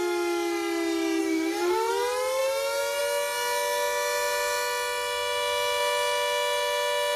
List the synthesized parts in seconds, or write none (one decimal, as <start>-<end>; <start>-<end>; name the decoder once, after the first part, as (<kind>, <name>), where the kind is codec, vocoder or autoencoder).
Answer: 1.2-1.9 (codec, DAC)